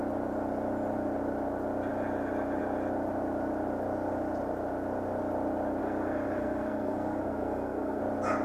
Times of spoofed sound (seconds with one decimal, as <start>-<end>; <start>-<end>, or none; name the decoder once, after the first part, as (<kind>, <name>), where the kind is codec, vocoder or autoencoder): 5.8-8.0 (codec, SNAC)